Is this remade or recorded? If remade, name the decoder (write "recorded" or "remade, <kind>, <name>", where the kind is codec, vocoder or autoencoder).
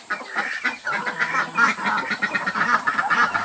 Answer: recorded